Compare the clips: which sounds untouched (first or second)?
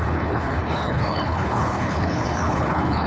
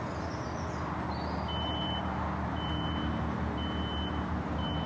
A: second